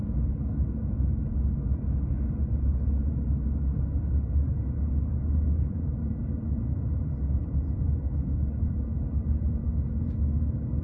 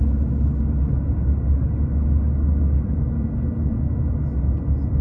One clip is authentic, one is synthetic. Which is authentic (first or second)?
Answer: second